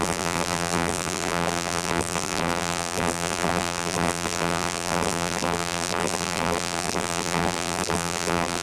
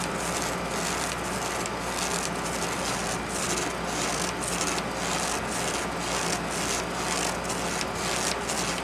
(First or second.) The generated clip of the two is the first